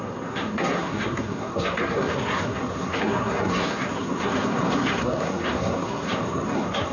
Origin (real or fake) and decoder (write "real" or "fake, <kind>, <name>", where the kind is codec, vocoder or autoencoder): fake, codec, SNAC